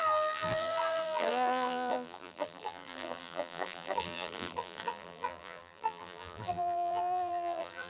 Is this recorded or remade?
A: remade